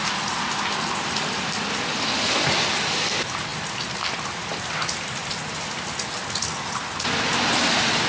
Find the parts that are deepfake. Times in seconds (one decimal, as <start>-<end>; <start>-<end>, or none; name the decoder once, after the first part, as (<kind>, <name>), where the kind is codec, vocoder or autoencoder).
none